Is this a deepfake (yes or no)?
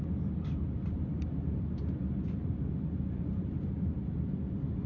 no